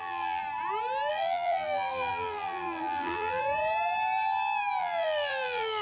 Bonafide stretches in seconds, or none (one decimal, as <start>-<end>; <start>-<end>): 0.4-1.1; 3.4-4.8